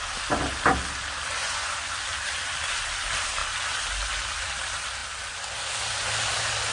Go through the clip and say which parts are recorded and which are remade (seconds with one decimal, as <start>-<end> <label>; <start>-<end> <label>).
0.0-1.4 recorded; 1.4-1.9 remade; 1.9-6.7 recorded